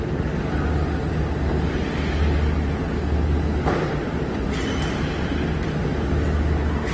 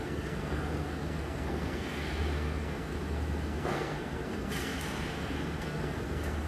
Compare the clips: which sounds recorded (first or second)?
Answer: first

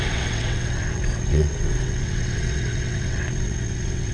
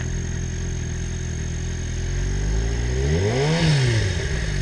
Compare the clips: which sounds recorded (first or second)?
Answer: second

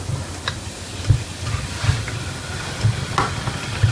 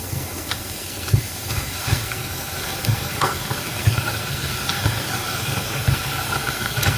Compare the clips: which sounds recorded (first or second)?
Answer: first